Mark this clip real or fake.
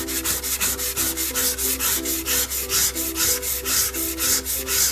real